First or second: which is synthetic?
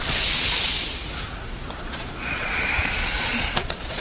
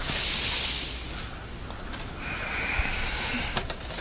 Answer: first